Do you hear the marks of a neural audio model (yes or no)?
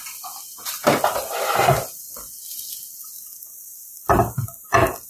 no